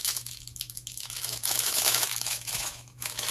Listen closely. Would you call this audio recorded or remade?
remade